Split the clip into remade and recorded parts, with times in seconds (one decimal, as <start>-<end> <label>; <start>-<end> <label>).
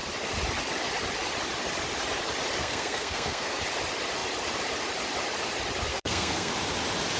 0.0-2.6 recorded; 2.6-3.6 remade; 3.6-5.9 recorded; 5.9-6.5 remade; 6.5-7.2 recorded